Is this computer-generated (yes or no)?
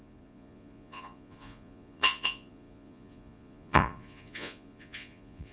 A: yes